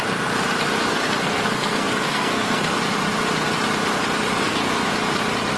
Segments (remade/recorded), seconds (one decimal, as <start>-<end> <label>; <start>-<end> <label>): 0.0-0.9 recorded; 0.9-2.8 remade; 2.8-4.4 recorded; 4.4-4.9 remade; 4.9-5.6 recorded